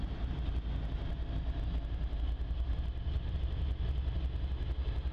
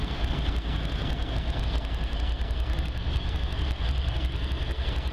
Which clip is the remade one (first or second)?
second